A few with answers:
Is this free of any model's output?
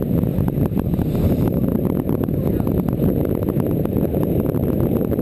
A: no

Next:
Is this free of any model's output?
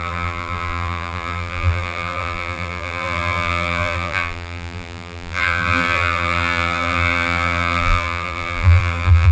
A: no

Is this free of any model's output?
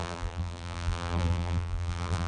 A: no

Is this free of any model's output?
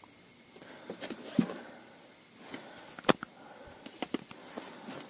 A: yes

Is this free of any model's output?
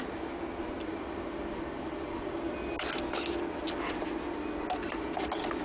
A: yes